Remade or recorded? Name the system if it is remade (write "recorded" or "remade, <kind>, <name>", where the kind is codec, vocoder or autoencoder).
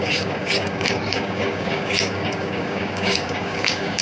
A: remade, codec, DAC